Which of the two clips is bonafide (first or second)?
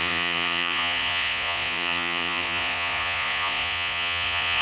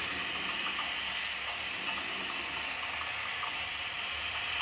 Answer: second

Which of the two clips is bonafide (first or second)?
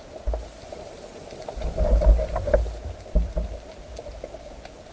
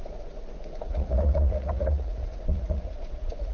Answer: first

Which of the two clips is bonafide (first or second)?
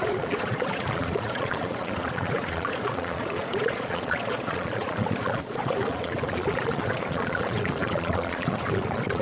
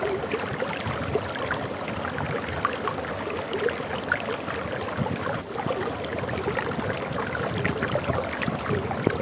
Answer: second